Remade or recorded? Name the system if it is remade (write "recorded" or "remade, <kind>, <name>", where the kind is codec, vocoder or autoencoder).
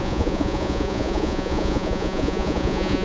remade, vocoder, Vocos